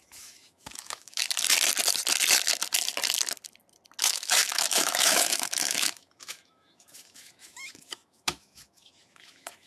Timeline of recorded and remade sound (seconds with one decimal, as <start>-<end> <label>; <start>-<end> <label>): 0.0-1.2 remade; 1.2-4.0 recorded; 4.0-9.7 remade